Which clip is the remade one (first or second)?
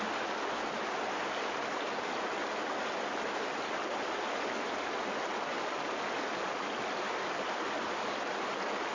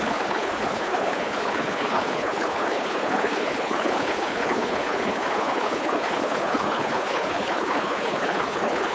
second